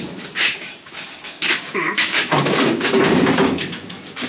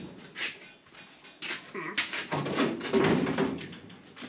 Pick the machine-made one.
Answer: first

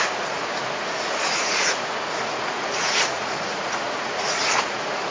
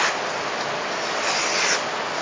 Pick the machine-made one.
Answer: first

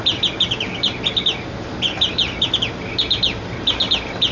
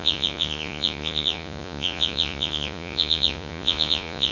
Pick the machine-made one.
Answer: second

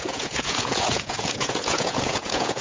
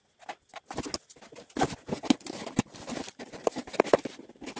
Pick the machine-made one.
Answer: first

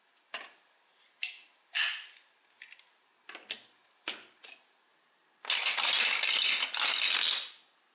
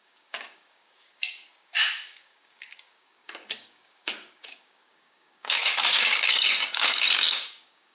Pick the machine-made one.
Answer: second